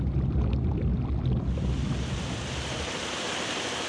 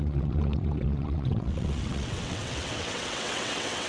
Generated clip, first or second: second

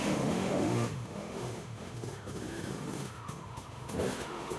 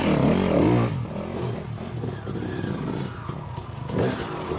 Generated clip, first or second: first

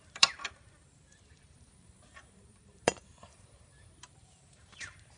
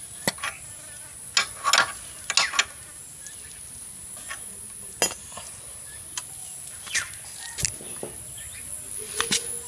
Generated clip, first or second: first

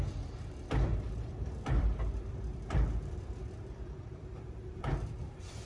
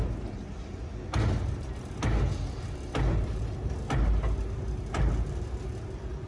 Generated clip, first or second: first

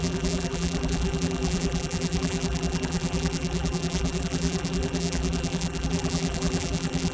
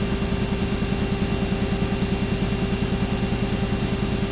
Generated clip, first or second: first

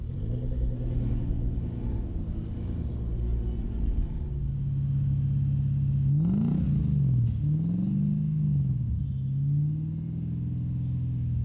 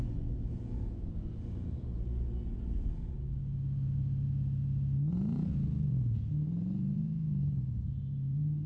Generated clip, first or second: second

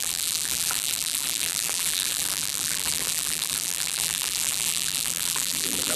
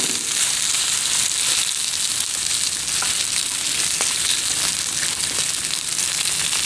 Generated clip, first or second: first